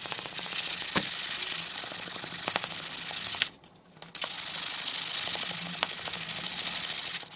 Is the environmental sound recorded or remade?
recorded